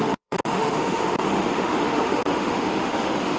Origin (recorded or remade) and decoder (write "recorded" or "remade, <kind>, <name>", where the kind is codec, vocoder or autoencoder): remade, autoencoder, DAC-VAE